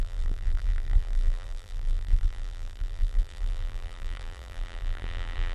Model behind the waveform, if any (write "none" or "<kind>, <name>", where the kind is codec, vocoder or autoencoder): vocoder, BigVGAN v2